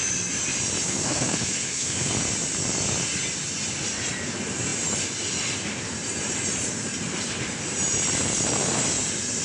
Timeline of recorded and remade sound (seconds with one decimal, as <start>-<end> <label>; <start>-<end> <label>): 0.0-0.8 recorded; 0.8-2.1 remade; 2.1-9.4 recorded